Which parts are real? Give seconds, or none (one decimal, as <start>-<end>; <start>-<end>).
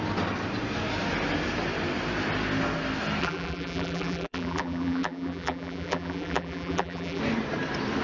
0.0-3.2; 7.2-8.0